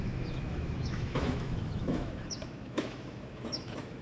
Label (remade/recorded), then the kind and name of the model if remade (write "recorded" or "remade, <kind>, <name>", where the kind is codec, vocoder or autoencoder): remade, autoencoder, DAC-VAE